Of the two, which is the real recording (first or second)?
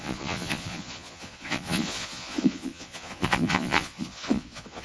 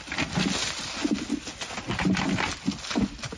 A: second